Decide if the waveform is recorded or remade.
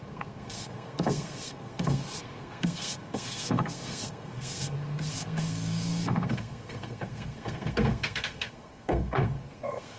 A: remade